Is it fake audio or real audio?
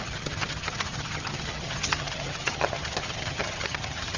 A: fake